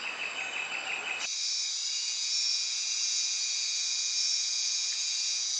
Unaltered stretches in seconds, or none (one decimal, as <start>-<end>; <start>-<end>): 0.0-2.0